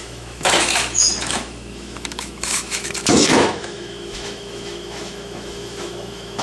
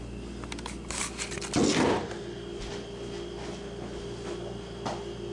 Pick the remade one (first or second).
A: first